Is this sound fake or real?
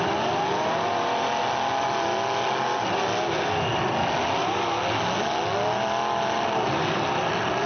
real